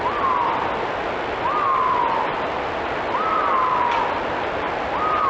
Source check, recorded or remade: recorded